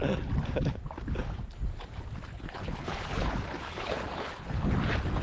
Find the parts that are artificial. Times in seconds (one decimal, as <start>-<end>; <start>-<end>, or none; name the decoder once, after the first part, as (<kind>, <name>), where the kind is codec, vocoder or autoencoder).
2.3-4.7 (codec, HILCodec)